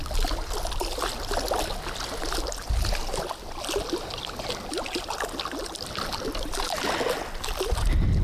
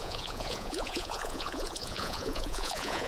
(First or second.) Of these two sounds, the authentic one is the first